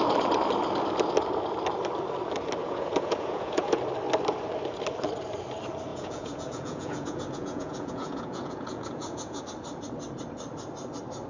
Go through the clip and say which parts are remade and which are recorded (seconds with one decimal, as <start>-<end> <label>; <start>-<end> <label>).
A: 0.0-2.6 recorded; 2.6-3.8 remade; 3.8-5.9 recorded; 5.9-9.4 remade; 9.4-11.3 recorded